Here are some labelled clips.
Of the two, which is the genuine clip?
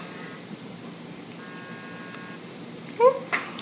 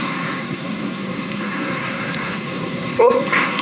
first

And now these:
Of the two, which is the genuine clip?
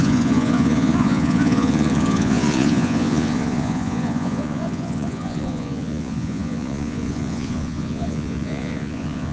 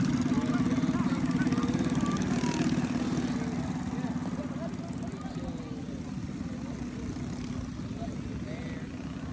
second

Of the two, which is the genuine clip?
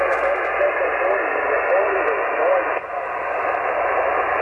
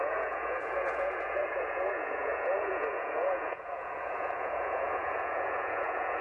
first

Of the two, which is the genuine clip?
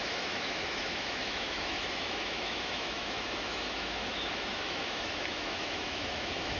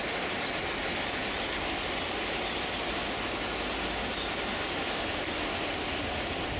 second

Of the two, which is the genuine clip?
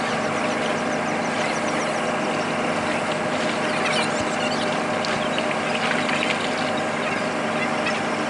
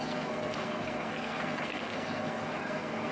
first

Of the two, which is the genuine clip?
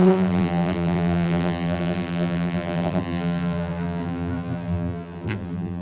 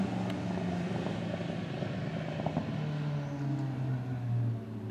second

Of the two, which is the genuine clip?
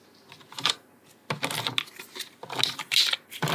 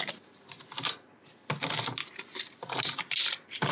first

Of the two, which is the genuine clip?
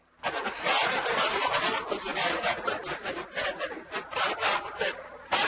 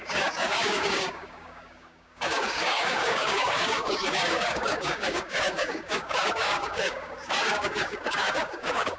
first